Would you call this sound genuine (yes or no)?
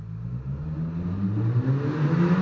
yes